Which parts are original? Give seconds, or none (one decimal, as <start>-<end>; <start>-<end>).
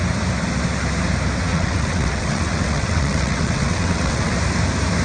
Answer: 0.0-1.5; 4.3-5.0